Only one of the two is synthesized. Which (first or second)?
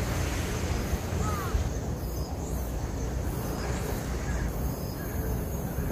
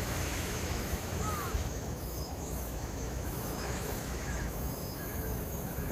second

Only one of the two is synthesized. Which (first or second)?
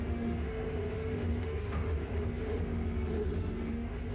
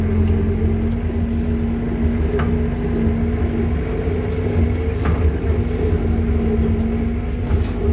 first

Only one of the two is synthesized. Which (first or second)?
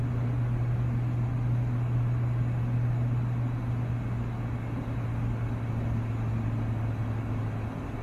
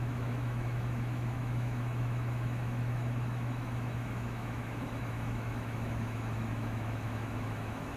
second